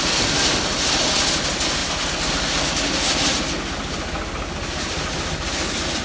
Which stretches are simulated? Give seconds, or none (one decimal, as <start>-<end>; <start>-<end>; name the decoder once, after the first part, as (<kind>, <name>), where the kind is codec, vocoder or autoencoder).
none